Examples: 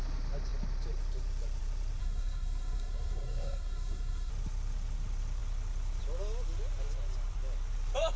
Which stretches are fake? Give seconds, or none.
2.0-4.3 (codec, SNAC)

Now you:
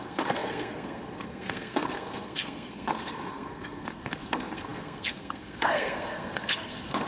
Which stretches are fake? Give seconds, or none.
0.0-7.1 (codec, SNAC)

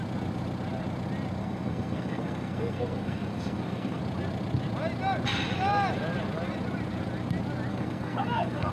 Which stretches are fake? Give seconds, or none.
1.4-4.0 (codec, SNAC); 7.7-8.7

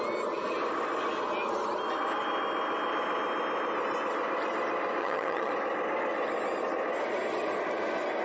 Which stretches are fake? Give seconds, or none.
5.0-5.5 (vocoder, HiFi-GAN)

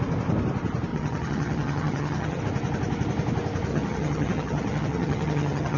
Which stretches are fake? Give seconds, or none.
0.9-2.4 (vocoder, HiFi-GAN); 3.7-5.8

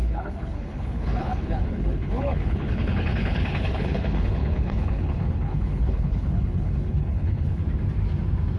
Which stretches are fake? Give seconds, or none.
0.0-7.6 (codec, HILCodec)

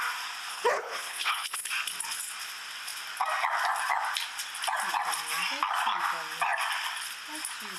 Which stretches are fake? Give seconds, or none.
0.5-1.7 (codec, HILCodec)